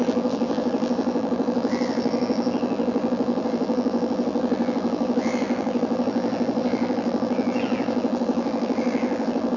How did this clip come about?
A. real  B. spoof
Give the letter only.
B